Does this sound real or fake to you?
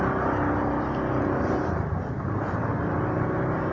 real